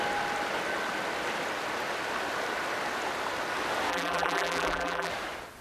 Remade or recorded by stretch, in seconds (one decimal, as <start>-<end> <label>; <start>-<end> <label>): 0.0-3.9 recorded; 3.9-5.1 remade; 5.1-5.6 recorded

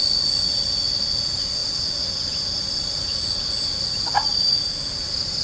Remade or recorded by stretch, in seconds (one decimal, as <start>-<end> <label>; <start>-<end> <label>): 0.0-4.2 recorded; 4.2-4.8 remade; 4.8-5.4 recorded

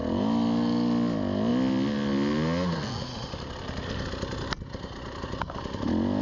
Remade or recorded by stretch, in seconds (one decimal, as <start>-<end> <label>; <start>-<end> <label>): 0.0-6.2 recorded

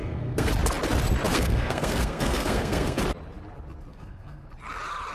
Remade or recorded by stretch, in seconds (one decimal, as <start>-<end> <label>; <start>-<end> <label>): 0.0-0.5 remade; 0.5-1.3 recorded; 1.3-3.0 remade; 3.0-3.9 recorded; 3.9-4.5 remade; 4.5-5.1 recorded

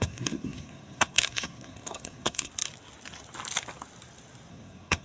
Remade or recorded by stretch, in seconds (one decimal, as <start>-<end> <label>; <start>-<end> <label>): 0.0-2.5 remade; 2.5-4.5 recorded; 4.5-5.0 remade

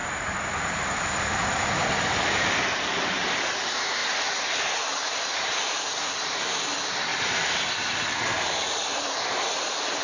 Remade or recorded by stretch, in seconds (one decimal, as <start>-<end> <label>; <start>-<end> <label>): 0.0-10.0 recorded

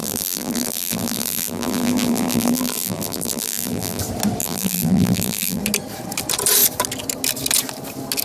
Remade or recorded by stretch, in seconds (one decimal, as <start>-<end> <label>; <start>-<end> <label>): 0.0-4.0 remade; 4.0-4.4 recorded; 4.4-5.6 remade; 5.6-8.2 recorded

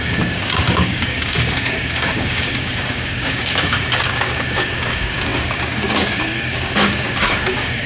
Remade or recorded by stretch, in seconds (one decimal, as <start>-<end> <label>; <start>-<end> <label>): 0.0-7.9 remade